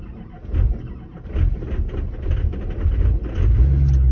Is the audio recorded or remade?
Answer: recorded